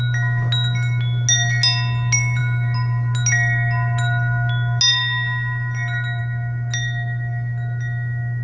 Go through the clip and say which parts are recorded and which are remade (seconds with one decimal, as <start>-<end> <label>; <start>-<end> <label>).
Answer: 0.0-8.4 recorded